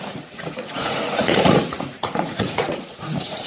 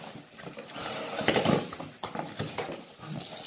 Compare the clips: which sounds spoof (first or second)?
first